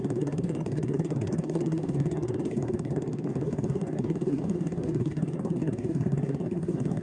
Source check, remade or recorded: remade